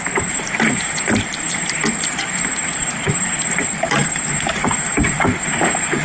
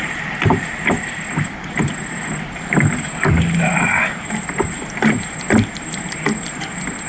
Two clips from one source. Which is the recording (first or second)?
second